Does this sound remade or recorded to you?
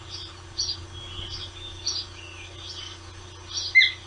recorded